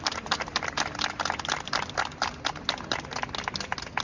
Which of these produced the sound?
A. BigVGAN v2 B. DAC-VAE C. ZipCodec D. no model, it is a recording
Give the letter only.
D